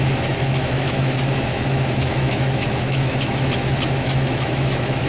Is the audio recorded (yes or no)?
no